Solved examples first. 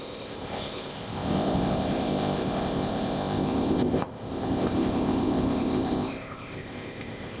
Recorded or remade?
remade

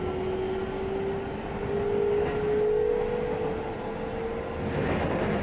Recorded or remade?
recorded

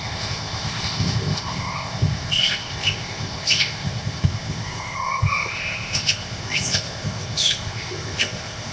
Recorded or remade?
remade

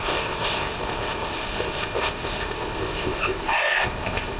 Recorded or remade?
remade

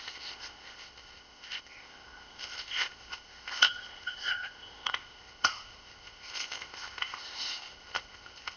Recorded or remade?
remade